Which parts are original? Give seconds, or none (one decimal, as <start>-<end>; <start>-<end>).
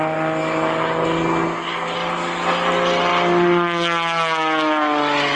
0.0-5.4